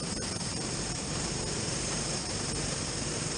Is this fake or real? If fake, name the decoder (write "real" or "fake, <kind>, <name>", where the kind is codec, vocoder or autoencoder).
fake, vocoder, BigVGAN v2